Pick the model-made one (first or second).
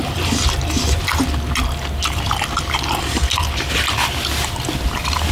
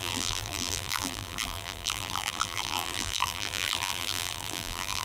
second